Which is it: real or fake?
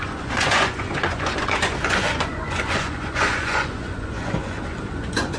fake